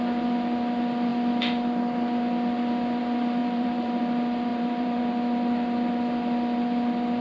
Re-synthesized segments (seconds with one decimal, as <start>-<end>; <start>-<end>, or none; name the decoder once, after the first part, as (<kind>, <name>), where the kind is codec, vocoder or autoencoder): 3.4-4.0 (vocoder, BigVGAN v2); 4.5-5.0